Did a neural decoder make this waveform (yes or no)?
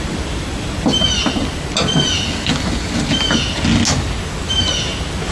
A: no